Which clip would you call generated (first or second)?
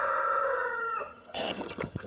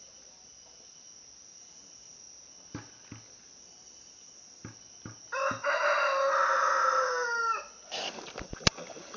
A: first